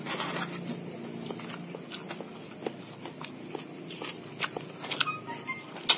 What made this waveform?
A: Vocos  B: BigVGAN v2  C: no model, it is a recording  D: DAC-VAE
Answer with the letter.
C